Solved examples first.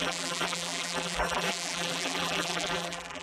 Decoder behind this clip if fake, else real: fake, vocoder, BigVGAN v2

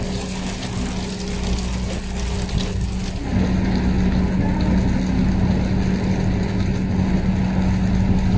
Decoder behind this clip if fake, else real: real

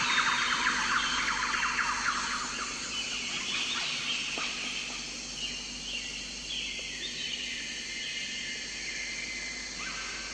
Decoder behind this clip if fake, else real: real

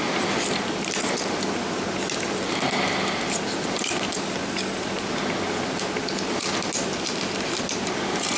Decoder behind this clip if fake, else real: real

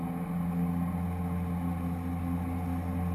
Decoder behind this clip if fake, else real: real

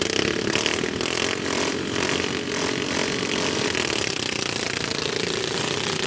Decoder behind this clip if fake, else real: real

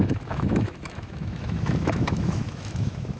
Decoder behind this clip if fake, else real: fake, autoencoder, DAC-VAE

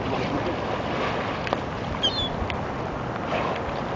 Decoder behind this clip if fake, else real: real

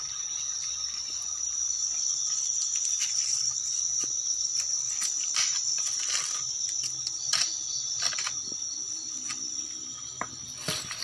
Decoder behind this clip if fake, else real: real